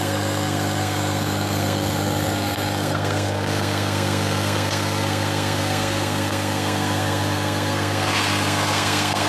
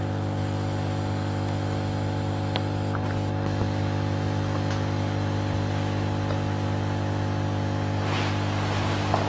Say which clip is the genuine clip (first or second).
second